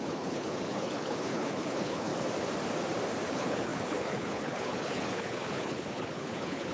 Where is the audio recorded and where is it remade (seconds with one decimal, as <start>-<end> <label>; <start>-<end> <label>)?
0.0-2.1 remade; 2.1-3.3 recorded; 3.3-6.7 remade